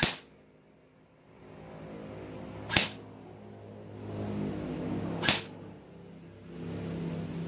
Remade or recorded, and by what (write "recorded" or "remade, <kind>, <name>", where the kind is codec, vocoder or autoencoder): recorded